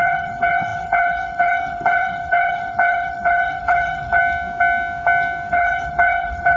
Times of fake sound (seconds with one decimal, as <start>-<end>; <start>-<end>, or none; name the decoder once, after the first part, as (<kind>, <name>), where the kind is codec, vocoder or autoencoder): 0.0-4.2 (codec, HILCodec); 5.5-6.6